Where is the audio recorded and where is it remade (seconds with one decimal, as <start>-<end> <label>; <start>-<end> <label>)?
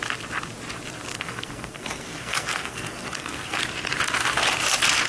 0.0-1.1 recorded; 1.1-3.6 remade; 3.6-5.1 recorded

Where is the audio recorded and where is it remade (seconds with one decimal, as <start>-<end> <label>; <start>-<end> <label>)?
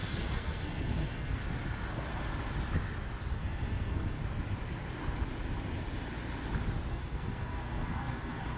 0.0-1.4 remade; 1.4-3.3 recorded; 3.3-4.2 remade; 4.2-6.9 recorded; 6.9-8.6 remade